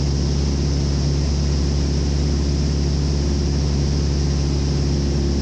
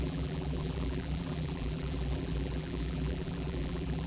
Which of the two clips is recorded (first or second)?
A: first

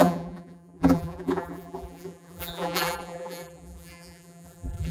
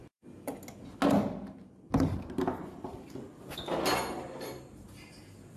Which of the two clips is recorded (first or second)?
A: second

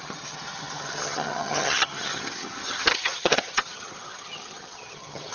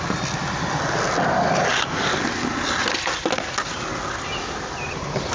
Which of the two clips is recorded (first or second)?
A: second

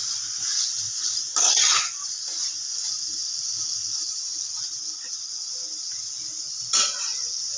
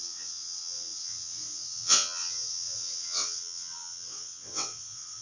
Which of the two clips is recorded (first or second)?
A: first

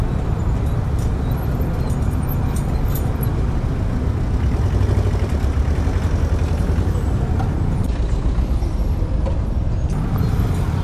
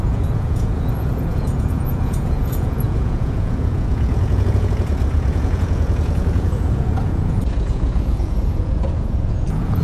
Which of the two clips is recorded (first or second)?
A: first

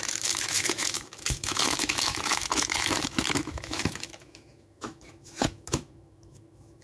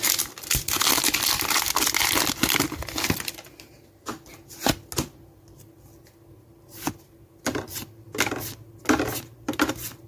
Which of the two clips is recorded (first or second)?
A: second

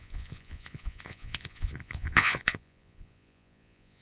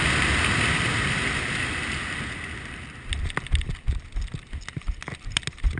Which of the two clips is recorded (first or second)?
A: second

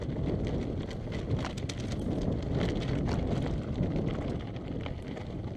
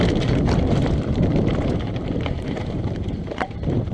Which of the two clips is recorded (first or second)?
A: first